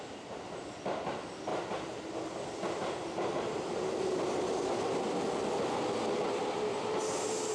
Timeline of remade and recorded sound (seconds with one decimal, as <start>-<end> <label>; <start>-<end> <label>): 0.0-1.5 recorded; 1.5-4.7 remade; 4.7-7.5 recorded